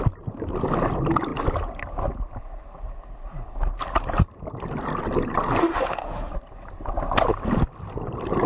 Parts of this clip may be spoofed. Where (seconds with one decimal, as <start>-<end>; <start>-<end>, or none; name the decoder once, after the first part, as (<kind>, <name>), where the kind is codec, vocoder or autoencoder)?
5.6-6.3 (autoencoder, DAC-VAE)